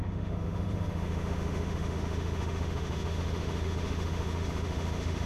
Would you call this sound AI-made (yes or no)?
yes